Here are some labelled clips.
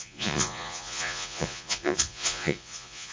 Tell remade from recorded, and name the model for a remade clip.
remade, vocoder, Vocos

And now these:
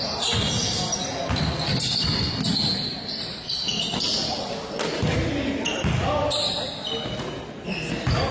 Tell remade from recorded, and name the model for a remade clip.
recorded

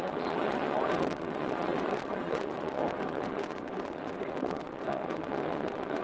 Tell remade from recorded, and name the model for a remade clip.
remade, vocoder, WaveNeXt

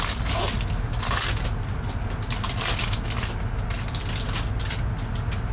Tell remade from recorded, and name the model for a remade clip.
recorded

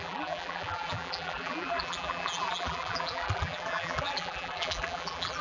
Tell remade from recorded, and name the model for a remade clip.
remade, vocoder, BigVGAN v2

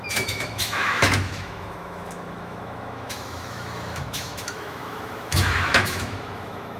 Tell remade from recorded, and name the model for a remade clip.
remade, autoencoder, DAC-VAE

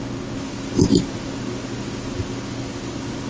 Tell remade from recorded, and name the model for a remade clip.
recorded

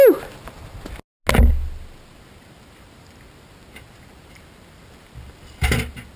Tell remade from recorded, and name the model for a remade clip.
recorded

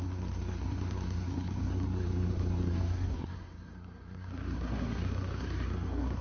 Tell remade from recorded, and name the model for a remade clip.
remade, codec, SNAC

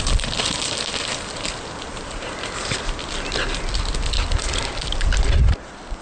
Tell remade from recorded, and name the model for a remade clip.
recorded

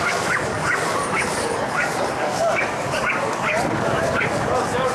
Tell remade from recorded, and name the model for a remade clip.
remade, codec, DAC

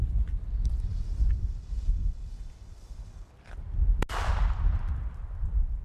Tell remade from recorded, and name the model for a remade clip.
recorded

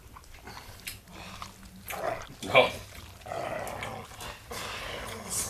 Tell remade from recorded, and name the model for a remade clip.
recorded